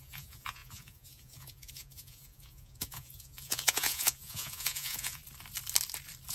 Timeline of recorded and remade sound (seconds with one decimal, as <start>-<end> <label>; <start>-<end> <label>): 0.0-5.2 remade; 5.2-6.3 recorded